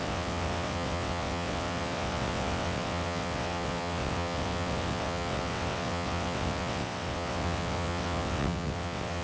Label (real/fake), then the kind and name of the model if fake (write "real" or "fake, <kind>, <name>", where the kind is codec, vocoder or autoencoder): fake, vocoder, WaveNeXt